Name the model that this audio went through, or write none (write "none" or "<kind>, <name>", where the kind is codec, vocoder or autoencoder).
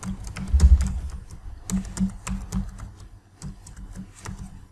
none